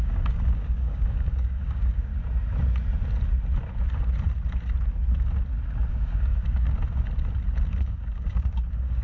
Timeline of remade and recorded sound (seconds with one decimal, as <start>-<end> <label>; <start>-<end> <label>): 0.0-2.1 remade; 2.1-5.9 recorded; 5.9-6.8 remade; 6.8-7.8 recorded; 7.8-9.0 remade